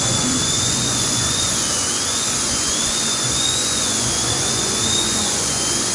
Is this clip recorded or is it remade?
remade